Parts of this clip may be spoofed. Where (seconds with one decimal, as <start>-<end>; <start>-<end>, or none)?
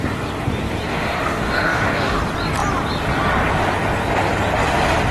0.9-2.2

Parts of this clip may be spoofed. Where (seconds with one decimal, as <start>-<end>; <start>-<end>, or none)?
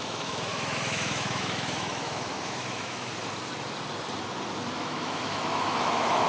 0.0-3.1; 4.7-6.3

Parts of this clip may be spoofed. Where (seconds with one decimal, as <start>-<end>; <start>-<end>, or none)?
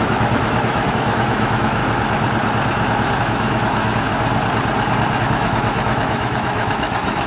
0.0-1.8; 3.2-4.1; 5.2-7.3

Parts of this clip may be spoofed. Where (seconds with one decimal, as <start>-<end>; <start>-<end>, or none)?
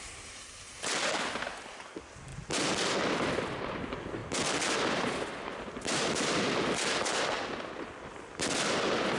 none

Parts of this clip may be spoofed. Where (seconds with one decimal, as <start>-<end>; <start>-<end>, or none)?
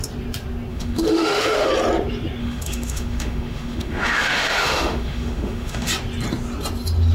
0.7-1.7; 2.4-5.9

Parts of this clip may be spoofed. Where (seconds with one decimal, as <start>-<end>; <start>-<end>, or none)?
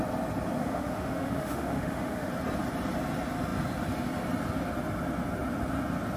0.6-2.3